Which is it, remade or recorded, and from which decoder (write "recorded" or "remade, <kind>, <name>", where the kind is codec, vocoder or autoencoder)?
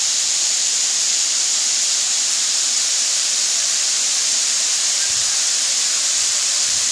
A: remade, vocoder, BigVGAN v2